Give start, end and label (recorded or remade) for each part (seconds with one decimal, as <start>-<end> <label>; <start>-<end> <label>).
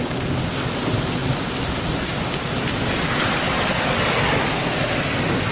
0.0-1.2 remade; 1.2-1.7 recorded; 1.7-5.5 remade